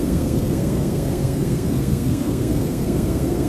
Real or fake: fake